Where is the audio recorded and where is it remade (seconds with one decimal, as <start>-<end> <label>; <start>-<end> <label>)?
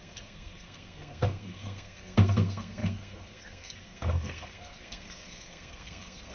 0.0-6.3 remade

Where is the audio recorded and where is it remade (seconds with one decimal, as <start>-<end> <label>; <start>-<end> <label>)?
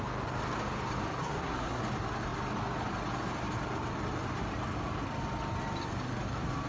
0.0-1.2 recorded; 1.2-1.8 remade; 1.8-6.7 recorded